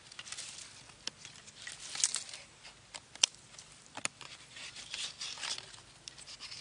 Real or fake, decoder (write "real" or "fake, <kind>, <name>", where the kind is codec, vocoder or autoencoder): real